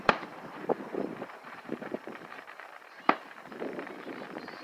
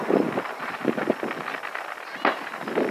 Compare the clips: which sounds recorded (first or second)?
second